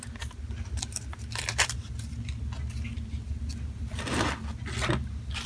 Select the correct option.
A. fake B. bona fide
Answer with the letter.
B